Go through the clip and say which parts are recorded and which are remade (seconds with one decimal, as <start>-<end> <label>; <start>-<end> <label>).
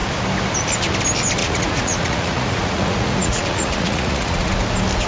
0.0-1.4 recorded; 1.4-4.5 remade; 4.5-5.1 recorded